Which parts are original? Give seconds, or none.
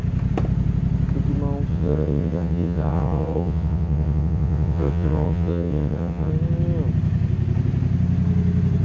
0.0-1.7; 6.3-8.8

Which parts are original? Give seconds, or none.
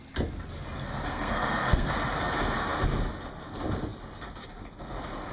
0.0-1.1; 1.9-5.3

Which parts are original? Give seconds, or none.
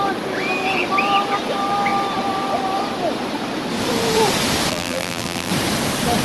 0.0-4.7; 5.5-6.2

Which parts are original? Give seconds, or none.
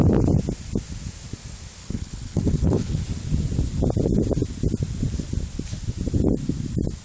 0.0-1.8; 3.0-7.0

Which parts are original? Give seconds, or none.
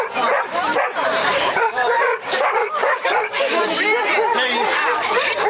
0.0-1.2; 4.1-5.5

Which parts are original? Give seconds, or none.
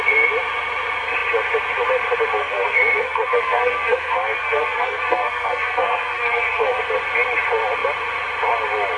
0.0-2.4; 6.8-9.0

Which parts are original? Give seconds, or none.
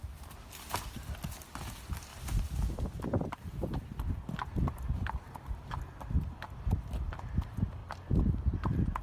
0.0-9.0